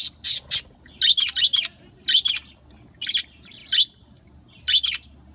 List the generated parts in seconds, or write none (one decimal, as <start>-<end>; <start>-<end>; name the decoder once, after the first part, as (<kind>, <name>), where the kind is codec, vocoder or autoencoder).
none